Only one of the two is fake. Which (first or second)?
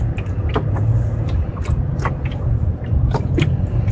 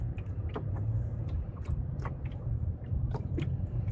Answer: second